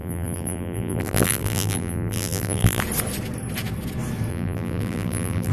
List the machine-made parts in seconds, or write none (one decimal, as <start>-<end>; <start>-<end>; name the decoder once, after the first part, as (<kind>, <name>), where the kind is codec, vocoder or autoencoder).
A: 0.0-2.8 (vocoder, BigVGAN v2); 4.3-5.5